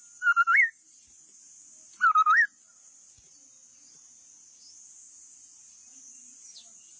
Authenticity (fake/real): real